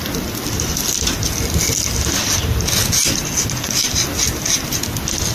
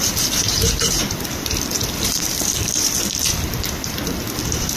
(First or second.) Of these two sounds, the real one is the first